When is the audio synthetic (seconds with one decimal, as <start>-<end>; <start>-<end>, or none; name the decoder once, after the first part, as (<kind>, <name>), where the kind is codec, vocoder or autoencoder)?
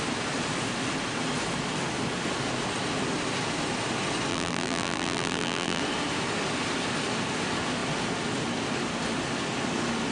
4.3-5.8 (vocoder, BigVGAN v2)